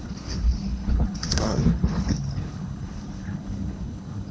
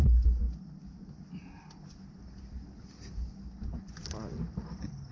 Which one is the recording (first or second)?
second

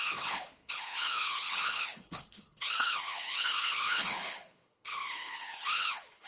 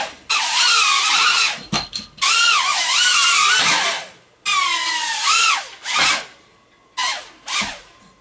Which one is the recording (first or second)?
second